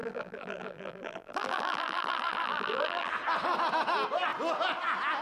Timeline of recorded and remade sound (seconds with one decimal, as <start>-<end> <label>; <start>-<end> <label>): 0.0-3.1 remade; 3.1-5.2 recorded